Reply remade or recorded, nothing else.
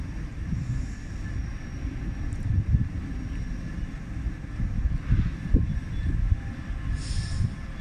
recorded